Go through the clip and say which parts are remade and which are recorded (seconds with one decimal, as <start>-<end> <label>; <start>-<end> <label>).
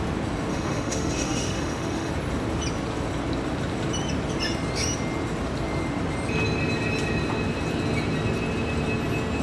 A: 0.0-0.5 recorded; 0.5-2.1 remade; 2.1-9.4 recorded